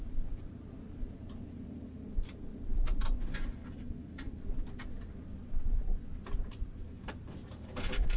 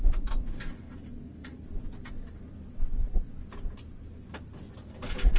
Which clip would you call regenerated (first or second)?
first